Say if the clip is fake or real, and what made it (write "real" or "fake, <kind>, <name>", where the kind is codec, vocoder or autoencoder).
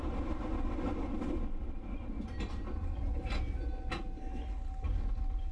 real